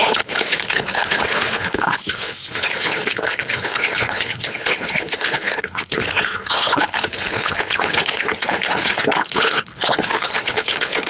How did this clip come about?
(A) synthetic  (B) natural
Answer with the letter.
A